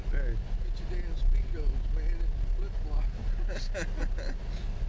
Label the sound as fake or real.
real